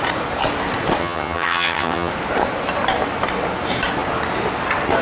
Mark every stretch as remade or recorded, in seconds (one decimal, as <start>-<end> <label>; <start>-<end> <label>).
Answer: 0.0-1.0 recorded; 1.0-2.1 remade; 2.1-5.0 recorded